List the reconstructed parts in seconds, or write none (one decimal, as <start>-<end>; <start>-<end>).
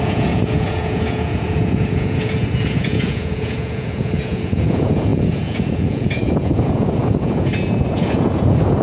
0.0-8.8